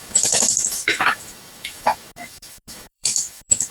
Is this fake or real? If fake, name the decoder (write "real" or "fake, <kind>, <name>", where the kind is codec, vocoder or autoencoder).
fake, autoencoder, DAC-VAE